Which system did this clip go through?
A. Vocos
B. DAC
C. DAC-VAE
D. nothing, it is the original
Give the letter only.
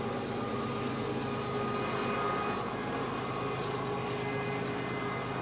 D